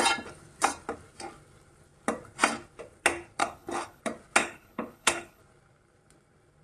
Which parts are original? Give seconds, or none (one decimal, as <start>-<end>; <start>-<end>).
0.0-3.4; 4.0-4.4; 5.4-6.6